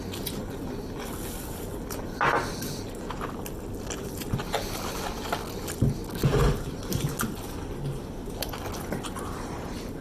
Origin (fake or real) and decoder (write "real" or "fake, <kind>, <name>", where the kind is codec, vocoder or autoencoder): real